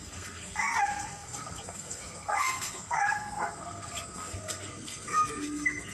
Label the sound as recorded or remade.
remade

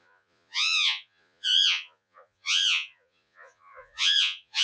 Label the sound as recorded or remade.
remade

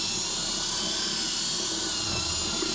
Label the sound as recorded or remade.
recorded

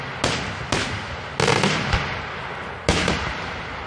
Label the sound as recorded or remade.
recorded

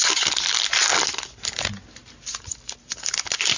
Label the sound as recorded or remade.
recorded